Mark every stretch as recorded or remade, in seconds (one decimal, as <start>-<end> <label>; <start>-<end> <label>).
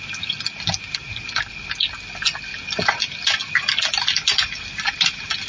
0.0-5.5 recorded